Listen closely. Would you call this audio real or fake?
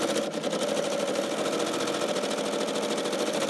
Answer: real